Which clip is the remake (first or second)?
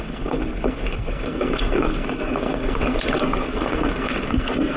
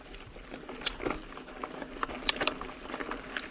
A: first